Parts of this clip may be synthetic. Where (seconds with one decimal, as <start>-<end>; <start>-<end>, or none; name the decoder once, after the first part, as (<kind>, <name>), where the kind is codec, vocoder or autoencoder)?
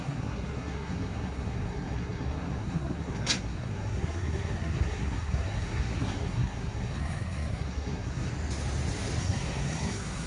0.0-8.3 (codec, SNAC); 9.2-10.3